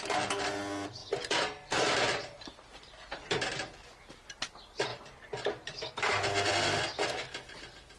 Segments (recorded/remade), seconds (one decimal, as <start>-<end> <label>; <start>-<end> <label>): 0.0-1.0 recorded; 1.0-4.4 remade; 4.4-4.9 recorded; 4.9-6.5 remade; 6.5-8.0 recorded